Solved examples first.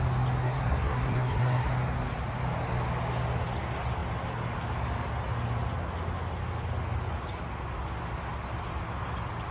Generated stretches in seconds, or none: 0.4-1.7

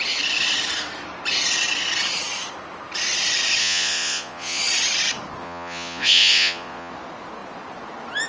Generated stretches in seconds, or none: 3.6-4.6; 5.4-6.9

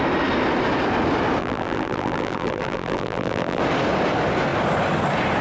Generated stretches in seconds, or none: 1.4-3.6

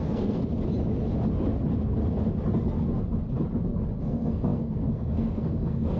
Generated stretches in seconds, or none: 0.0-0.4; 4.0-6.0

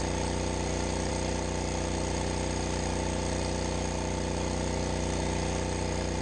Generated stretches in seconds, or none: none

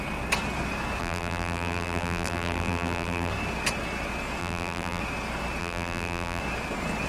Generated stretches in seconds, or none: 1.0-3.3; 4.4-5.0; 5.6-6.4

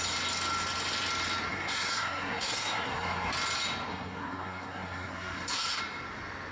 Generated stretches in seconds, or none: 1.5-3.3; 3.9-5.8

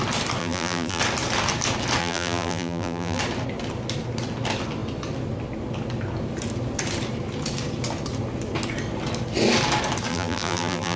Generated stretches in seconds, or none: 0.4-1.0; 2.0-3.2; 10.1-11.0